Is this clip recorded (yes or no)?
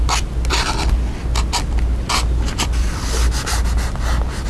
yes